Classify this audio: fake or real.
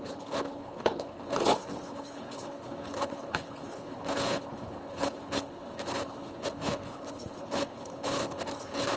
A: fake